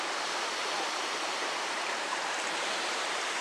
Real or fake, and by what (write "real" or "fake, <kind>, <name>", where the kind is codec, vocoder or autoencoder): fake, vocoder, BigVGAN v2